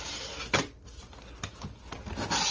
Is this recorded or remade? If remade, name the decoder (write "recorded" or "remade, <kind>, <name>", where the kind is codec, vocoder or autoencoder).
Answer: recorded